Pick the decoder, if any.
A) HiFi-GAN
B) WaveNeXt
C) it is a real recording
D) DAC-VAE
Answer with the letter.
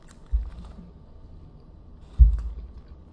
C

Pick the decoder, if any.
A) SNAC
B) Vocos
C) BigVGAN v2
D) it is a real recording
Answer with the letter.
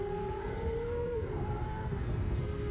A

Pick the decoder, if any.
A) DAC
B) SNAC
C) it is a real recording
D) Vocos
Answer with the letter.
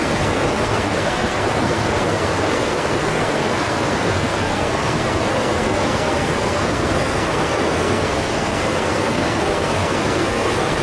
B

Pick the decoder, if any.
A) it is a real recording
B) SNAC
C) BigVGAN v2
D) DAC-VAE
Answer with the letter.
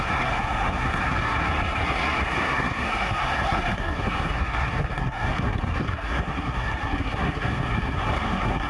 B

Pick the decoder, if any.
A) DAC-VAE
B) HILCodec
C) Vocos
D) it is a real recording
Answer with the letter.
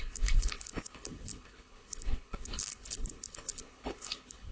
B